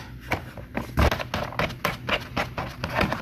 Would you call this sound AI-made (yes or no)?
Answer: no